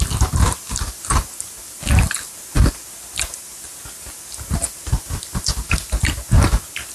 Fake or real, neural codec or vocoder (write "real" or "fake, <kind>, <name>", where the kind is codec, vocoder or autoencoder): real